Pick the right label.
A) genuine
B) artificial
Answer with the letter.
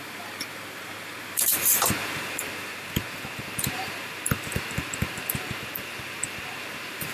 B